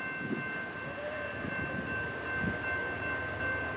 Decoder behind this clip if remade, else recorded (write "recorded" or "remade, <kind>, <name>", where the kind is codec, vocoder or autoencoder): recorded